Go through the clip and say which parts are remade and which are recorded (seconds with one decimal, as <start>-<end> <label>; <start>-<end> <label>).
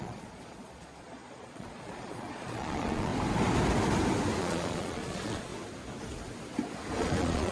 0.0-3.1 remade; 3.1-4.4 recorded; 4.4-5.5 remade; 5.5-7.0 recorded; 7.0-7.5 remade